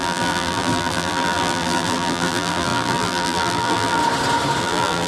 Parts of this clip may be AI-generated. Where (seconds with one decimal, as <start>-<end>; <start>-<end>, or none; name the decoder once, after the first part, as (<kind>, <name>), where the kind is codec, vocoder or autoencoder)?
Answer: 0.0-4.0 (vocoder, BigVGAN v2); 4.6-5.1